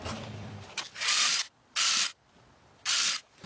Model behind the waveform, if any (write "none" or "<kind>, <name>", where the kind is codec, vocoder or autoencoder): vocoder, BigVGAN v2